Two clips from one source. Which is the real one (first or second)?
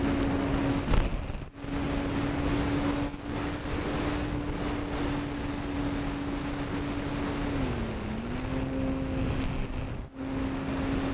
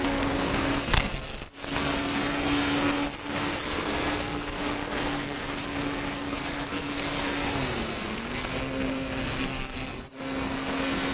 first